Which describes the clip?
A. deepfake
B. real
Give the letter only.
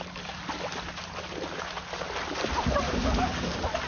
B